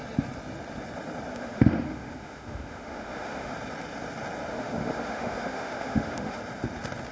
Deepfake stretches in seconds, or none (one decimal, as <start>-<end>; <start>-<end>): 1.3-3.5; 4.5-6.4